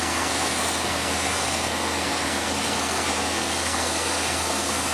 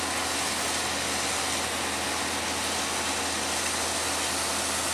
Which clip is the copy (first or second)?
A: first